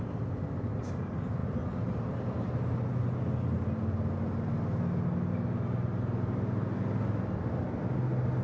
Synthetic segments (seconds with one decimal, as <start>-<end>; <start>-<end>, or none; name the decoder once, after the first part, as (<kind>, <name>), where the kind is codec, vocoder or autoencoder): none